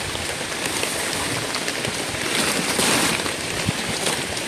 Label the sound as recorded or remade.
recorded